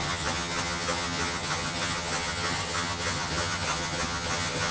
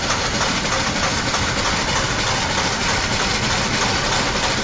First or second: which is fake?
first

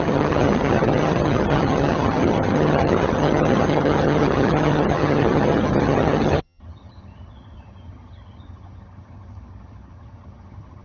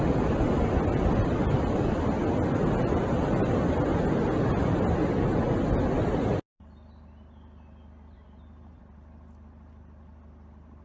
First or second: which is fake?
first